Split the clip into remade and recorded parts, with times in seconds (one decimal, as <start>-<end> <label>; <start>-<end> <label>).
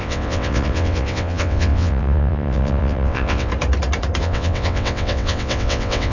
0.0-3.5 remade; 3.5-4.2 recorded; 4.2-6.1 remade